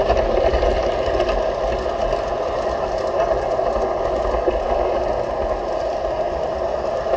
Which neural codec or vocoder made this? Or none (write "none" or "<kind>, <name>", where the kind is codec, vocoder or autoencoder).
none